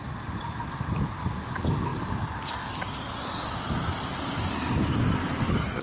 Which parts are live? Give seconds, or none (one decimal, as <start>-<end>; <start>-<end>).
0.0-1.9; 2.6-5.8